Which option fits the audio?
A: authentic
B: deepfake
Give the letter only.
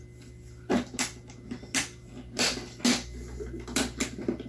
A